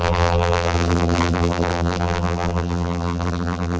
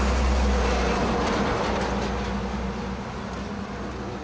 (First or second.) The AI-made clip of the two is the first